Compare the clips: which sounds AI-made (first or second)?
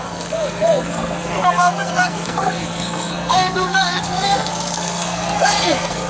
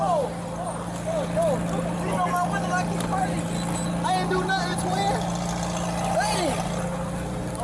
first